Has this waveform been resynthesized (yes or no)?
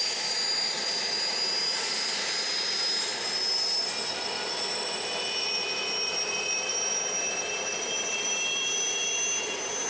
yes